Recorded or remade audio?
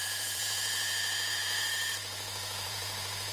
remade